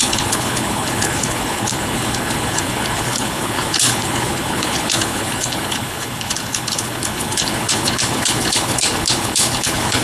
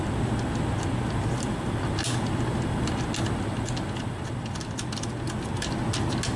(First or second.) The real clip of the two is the second